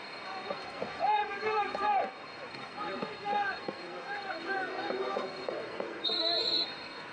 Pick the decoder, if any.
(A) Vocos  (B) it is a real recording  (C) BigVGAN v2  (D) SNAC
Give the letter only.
D